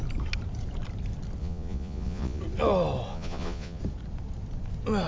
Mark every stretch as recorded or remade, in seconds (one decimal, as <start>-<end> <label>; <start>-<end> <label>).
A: 0.0-1.4 recorded; 1.4-2.4 remade; 2.4-3.1 recorded; 3.1-3.8 remade; 3.8-5.1 recorded